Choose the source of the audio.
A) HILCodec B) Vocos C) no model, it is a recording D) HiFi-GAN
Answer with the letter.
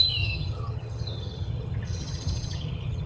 D